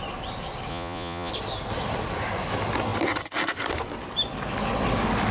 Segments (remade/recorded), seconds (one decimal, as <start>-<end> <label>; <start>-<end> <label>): 0.0-0.7 recorded; 0.7-1.3 remade; 1.3-5.3 recorded